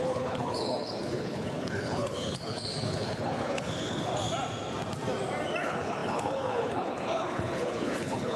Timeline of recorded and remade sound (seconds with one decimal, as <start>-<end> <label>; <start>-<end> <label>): 0.0-4.1 remade; 4.1-5.6 recorded; 5.6-8.4 remade